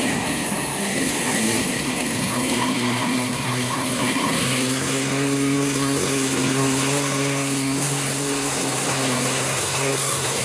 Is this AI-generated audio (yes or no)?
yes